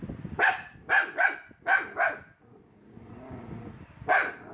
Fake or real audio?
real